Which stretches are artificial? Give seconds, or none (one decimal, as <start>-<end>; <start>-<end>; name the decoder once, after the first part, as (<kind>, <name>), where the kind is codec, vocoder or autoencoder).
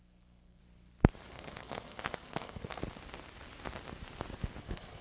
0.0-0.6 (codec, SNAC); 1.3-2.8; 4.6-5.0